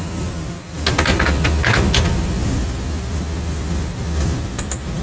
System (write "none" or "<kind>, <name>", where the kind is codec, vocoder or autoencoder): none